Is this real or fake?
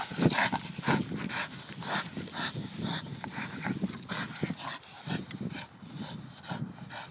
real